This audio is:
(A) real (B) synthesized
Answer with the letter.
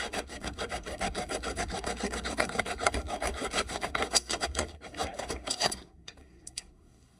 B